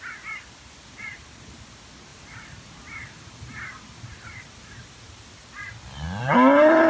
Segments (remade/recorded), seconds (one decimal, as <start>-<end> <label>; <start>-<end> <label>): 0.0-6.9 recorded